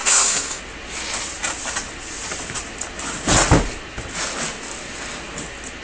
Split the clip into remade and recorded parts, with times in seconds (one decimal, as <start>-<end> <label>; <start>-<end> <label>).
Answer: 0.0-0.6 remade; 0.6-5.8 recorded